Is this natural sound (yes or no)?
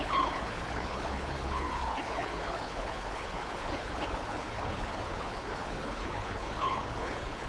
no